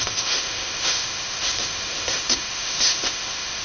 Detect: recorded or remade remade